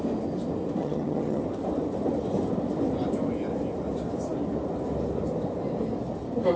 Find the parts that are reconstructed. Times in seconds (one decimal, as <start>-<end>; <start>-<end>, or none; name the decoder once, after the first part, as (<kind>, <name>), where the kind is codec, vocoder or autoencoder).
0.8-1.4 (vocoder, HiFi-GAN)